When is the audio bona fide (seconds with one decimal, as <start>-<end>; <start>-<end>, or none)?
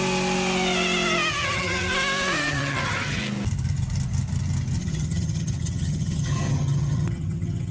0.0-1.3; 1.9-2.5; 3.2-4.8